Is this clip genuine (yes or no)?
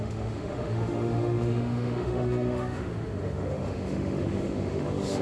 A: no